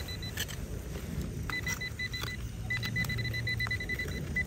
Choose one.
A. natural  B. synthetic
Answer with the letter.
A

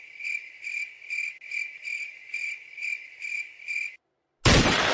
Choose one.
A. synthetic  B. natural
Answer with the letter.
B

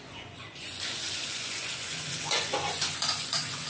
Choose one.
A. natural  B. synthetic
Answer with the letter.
B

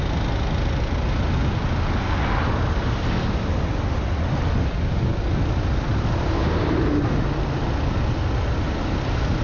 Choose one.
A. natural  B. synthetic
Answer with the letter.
A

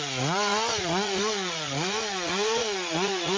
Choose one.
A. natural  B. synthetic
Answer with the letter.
B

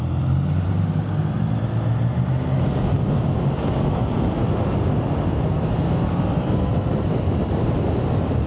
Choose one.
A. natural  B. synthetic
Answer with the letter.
A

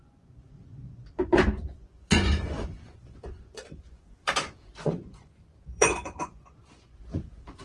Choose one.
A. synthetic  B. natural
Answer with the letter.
A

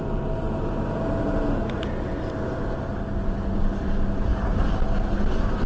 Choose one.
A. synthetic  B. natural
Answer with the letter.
B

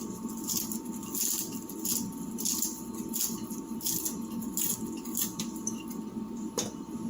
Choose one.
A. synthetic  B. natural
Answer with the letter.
B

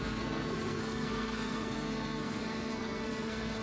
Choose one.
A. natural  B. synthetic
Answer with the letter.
B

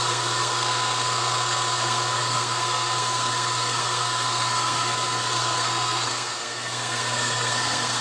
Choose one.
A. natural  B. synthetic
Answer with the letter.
B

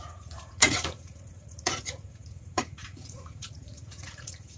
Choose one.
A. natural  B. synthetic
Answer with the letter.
B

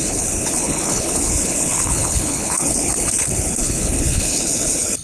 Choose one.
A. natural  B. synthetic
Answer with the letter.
B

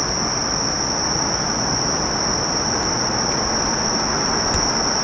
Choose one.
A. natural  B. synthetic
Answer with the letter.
A